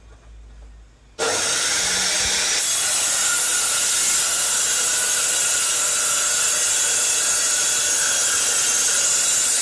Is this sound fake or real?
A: real